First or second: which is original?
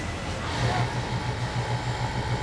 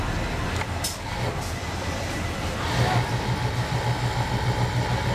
first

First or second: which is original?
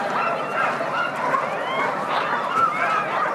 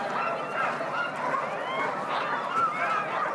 second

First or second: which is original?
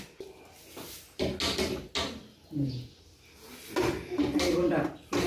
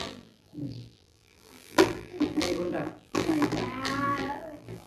first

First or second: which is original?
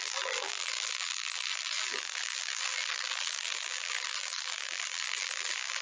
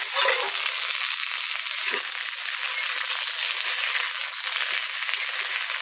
second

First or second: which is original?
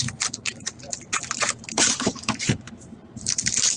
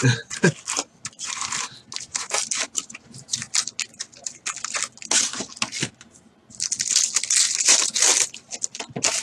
second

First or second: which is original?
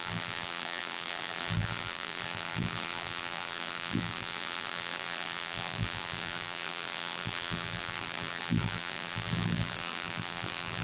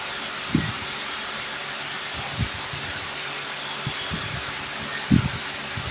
second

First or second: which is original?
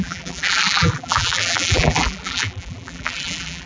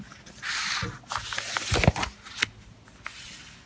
second